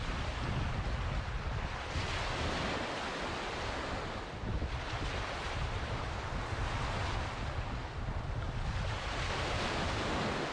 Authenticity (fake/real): real